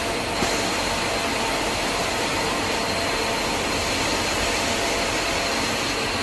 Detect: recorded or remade recorded